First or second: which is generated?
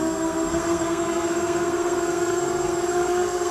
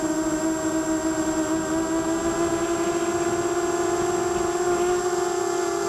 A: first